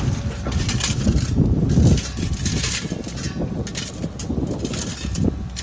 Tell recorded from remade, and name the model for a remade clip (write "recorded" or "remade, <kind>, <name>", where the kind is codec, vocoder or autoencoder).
recorded